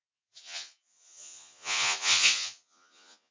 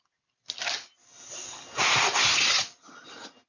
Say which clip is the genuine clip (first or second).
second